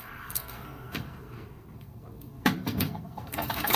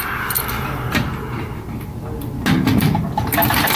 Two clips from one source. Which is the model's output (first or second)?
first